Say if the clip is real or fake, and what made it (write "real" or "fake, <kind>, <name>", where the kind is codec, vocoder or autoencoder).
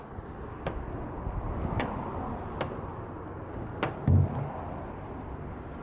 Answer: real